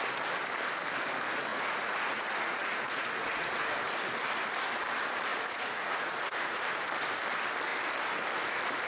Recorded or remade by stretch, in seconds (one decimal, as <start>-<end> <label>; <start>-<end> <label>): 0.0-1.5 recorded; 1.5-3.7 remade; 3.7-5.3 recorded; 5.3-6.6 remade; 6.6-8.9 recorded